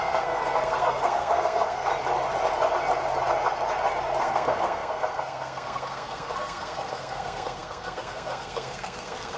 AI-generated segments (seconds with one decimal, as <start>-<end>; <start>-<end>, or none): 0.0-1.9; 4.2-9.4